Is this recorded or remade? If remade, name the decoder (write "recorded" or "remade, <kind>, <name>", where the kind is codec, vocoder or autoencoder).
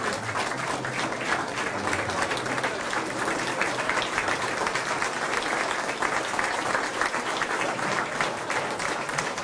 recorded